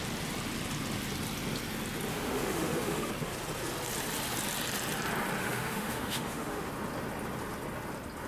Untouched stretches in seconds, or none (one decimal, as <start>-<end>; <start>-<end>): 0.0-2.1; 3.1-5.4; 6.7-8.3